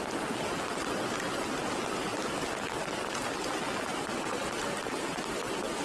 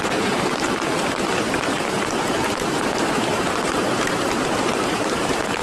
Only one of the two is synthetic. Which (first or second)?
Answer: second